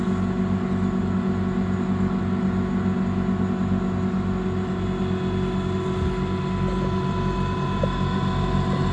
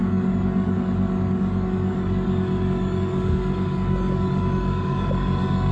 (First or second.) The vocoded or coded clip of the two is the second